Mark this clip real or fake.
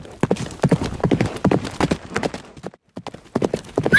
real